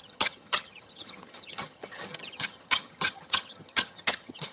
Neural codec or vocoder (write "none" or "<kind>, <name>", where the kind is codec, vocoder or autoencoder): vocoder, HiFi-GAN